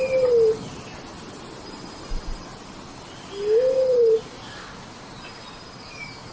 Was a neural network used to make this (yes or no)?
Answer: no